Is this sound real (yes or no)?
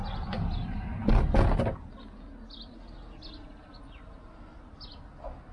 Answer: yes